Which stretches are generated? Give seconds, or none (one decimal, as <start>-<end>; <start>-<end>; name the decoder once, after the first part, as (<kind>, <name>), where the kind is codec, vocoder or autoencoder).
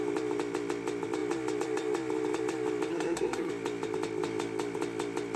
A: 2.9-3.5 (codec, SNAC)